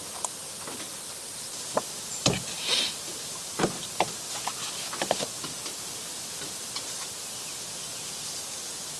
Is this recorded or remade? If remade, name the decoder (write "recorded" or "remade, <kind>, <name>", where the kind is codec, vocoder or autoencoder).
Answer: recorded